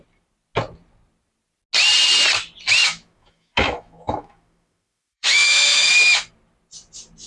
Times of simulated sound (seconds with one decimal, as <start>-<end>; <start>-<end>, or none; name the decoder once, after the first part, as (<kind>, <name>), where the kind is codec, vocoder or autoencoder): 2.8-5.9 (autoencoder, DAC-VAE)